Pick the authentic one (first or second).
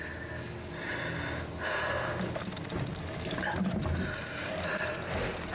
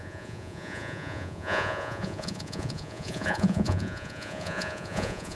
first